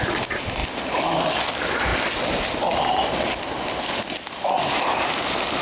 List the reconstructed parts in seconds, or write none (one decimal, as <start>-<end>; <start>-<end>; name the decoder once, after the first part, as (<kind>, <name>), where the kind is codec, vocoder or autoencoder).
none